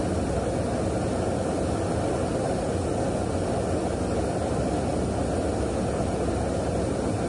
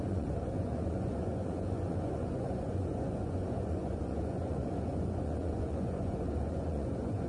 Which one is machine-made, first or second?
second